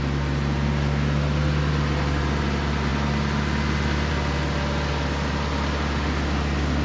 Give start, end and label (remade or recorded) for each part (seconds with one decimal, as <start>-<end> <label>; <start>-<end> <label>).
0.0-6.8 recorded